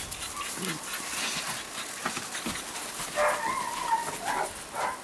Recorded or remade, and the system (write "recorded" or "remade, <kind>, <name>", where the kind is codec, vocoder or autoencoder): recorded